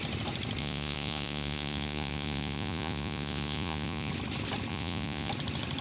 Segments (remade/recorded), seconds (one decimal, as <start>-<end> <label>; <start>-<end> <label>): 0.0-0.6 recorded; 0.6-4.1 remade; 4.1-4.7 recorded; 4.7-5.3 remade; 5.3-5.8 recorded